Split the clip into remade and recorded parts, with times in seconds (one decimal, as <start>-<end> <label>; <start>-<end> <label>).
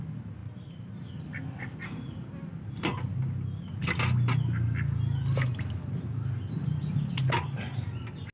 0.0-8.3 recorded